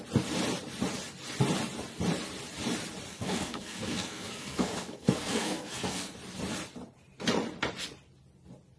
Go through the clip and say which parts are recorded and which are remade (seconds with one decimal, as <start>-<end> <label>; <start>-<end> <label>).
0.0-3.1 recorded; 3.1-6.1 remade; 6.1-8.8 recorded